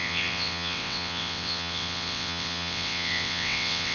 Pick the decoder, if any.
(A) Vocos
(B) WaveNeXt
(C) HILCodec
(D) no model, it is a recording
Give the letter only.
B